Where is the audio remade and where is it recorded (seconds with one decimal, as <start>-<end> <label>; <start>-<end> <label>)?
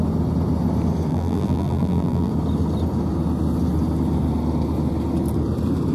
0.0-1.1 recorded; 1.1-2.3 remade; 2.3-5.9 recorded